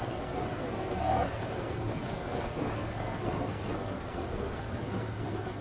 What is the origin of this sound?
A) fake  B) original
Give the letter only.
A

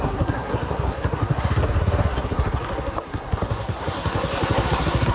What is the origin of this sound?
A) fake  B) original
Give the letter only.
A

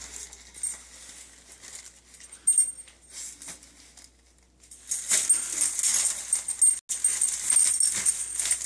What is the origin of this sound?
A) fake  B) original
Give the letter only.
B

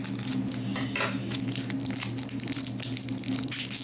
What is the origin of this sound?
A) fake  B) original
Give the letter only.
B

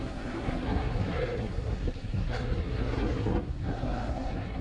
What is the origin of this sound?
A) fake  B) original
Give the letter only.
A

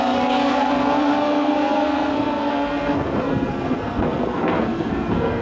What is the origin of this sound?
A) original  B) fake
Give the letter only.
B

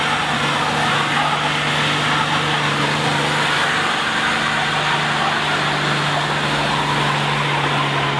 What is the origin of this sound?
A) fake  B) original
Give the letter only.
B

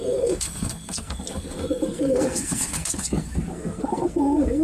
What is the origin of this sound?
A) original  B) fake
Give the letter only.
B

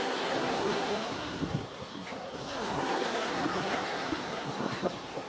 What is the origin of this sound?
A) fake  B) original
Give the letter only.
A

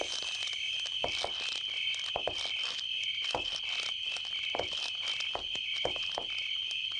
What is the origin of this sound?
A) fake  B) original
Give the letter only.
B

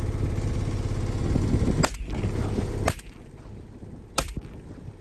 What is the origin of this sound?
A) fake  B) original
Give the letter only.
B